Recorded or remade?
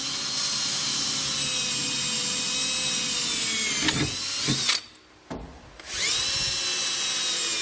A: recorded